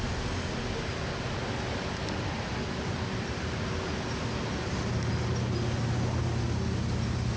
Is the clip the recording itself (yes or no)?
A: yes